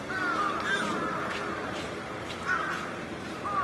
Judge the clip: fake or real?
fake